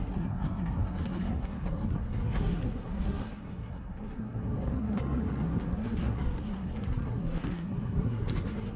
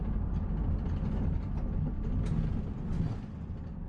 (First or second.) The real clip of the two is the second